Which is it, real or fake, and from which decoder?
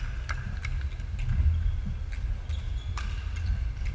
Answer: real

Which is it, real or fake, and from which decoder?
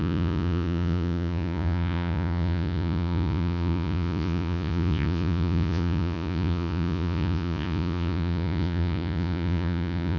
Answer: fake, vocoder, Vocos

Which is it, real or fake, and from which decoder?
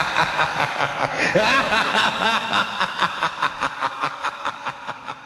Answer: fake, codec, DAC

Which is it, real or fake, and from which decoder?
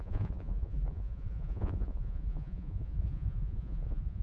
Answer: fake, vocoder, Vocos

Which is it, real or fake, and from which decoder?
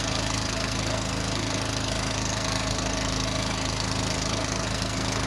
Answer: fake, codec, SNAC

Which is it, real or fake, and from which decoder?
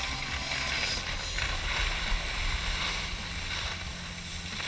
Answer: real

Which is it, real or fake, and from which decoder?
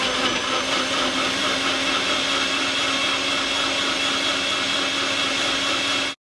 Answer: real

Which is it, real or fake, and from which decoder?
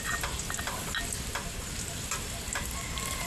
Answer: real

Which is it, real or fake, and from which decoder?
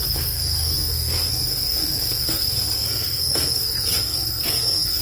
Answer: fake, codec, SNAC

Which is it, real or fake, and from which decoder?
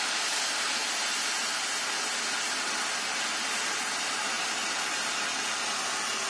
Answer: real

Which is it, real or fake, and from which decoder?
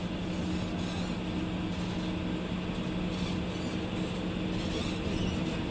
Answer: real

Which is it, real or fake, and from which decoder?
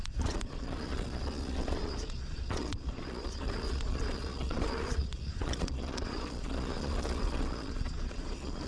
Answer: fake, vocoder, Vocos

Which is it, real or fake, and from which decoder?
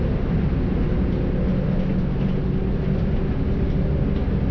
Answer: real